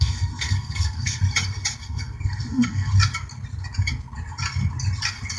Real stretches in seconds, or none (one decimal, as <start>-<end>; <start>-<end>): 1.2-1.8; 2.9-5.4